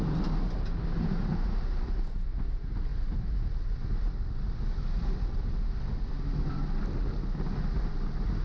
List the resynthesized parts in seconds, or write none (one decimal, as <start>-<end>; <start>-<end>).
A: none